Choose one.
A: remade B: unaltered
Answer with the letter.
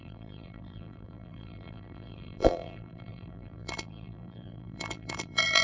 A